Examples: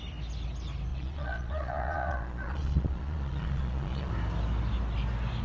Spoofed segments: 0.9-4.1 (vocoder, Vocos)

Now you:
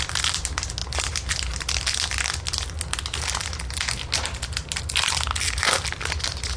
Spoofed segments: none

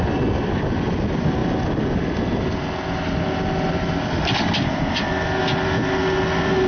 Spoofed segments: none

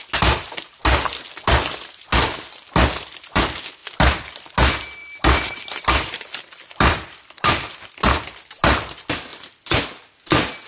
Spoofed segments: 5.0-8.0 (vocoder, BigVGAN v2); 9.3-9.8

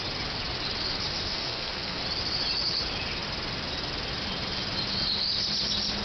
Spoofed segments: 1.3-2.0 (codec, SNAC)

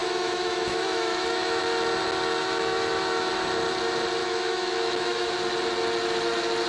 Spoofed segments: 0.0-1.6 (autoencoder, DAC-VAE); 2.4-3.3; 4.2-5.3

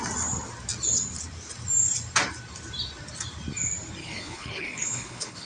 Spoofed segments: 4.0-5.5 (codec, HILCodec)

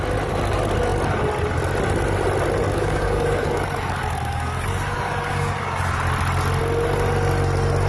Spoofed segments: 2.7-5.7 (codec, DAC)